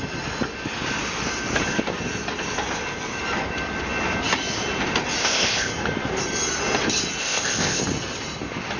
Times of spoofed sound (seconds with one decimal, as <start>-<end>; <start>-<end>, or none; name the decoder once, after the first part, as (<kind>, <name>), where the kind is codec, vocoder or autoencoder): 5.2-5.7 (codec, ZipCodec); 7.2-7.8